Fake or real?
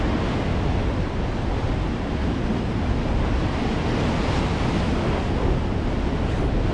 real